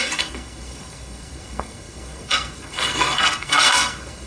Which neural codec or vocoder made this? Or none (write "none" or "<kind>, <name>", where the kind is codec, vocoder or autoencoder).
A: codec, SNAC